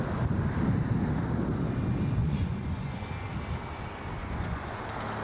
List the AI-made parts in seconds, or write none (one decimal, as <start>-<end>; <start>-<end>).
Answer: 2.2-3.1; 4.2-4.8